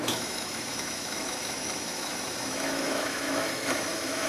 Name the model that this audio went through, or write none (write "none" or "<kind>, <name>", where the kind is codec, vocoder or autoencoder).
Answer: autoencoder, DAC-VAE